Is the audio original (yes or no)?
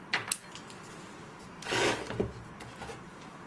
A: yes